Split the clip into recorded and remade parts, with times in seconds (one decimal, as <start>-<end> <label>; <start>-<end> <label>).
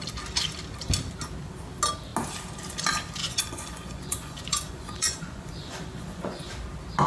0.0-3.2 recorded; 3.2-6.5 remade; 6.5-7.1 recorded